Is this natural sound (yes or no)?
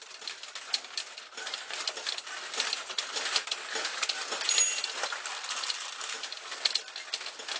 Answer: yes